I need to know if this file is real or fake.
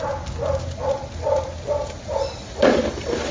real